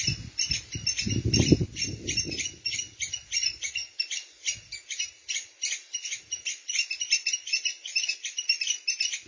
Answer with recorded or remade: recorded